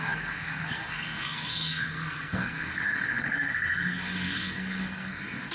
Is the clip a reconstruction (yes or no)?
yes